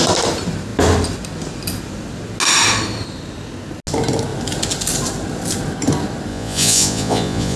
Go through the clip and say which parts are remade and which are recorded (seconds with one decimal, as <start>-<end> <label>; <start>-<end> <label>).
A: 0.0-6.3 recorded; 6.3-7.6 remade

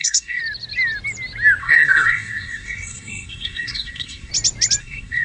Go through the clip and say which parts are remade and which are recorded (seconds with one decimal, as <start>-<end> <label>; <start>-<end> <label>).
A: 0.0-0.4 remade; 0.4-1.6 recorded; 1.6-4.3 remade; 4.3-4.8 recorded; 4.8-5.2 remade

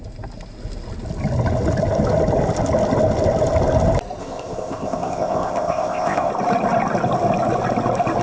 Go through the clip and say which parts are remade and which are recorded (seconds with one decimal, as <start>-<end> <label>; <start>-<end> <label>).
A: 0.0-4.2 recorded; 4.2-6.3 remade; 6.3-8.2 recorded

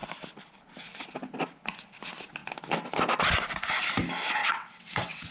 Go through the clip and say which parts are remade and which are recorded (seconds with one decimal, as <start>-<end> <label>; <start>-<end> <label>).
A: 0.0-4.4 recorded; 4.4-5.3 remade